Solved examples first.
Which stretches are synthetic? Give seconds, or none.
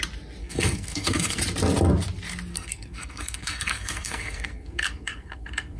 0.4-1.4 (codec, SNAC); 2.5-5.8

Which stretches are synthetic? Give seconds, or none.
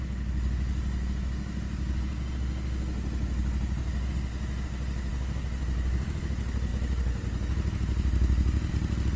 none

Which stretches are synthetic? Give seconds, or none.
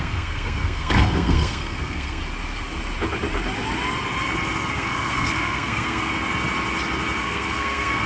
0.0-2.2 (codec, SNAC); 4.7-6.1; 7.2-8.1